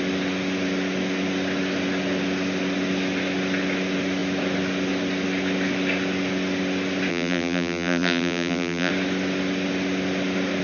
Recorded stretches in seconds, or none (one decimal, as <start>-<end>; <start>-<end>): 0.0-7.1; 8.9-10.6